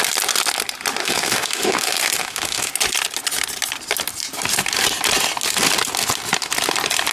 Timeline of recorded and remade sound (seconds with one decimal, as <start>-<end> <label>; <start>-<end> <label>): 0.0-1.0 recorded; 1.0-2.7 remade; 2.7-7.1 recorded